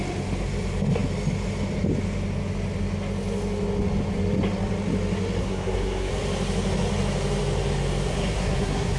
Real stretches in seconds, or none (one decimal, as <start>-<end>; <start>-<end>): 0.0-5.4; 6.1-8.1